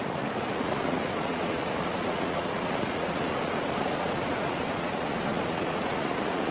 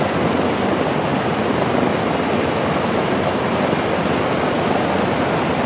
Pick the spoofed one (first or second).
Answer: first